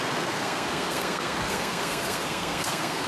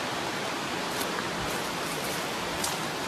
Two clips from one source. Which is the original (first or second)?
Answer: second